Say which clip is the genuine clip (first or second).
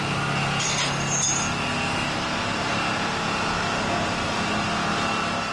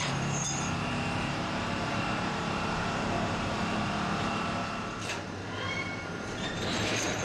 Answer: first